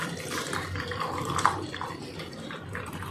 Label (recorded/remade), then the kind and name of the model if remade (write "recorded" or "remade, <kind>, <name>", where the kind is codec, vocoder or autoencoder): recorded